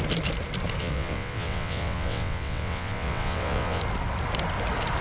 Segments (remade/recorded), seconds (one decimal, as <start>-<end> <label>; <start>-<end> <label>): 0.0-0.8 recorded; 0.8-3.8 remade; 3.8-5.0 recorded